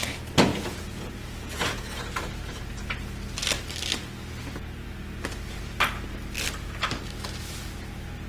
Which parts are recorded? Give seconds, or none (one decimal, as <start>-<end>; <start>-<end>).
0.0-0.5; 2.2-8.3